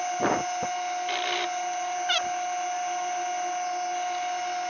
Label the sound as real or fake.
real